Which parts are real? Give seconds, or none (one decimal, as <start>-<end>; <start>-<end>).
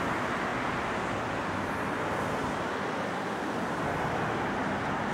0.0-5.1